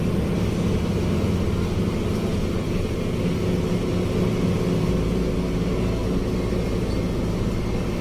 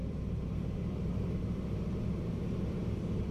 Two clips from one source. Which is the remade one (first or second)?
second